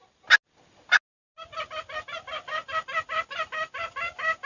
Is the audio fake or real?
real